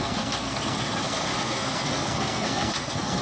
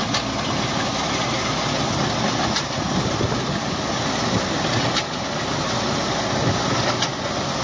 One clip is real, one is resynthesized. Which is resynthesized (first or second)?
first